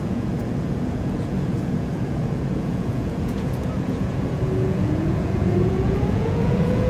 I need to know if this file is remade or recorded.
remade